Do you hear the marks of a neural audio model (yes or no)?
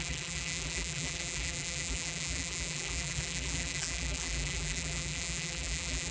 yes